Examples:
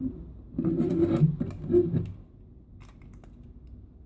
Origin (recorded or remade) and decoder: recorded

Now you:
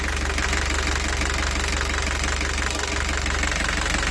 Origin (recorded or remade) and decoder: recorded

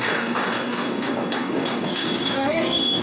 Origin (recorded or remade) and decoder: remade, codec, DAC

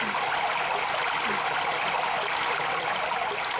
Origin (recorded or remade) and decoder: recorded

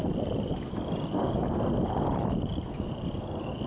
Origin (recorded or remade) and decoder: recorded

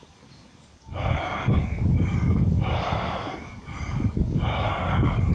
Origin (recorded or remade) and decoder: remade, codec, DAC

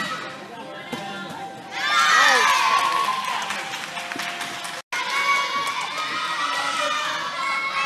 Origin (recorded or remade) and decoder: recorded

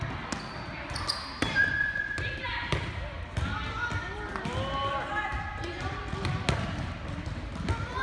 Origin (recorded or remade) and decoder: recorded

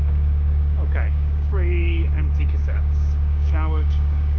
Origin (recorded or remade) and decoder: remade, codec, DAC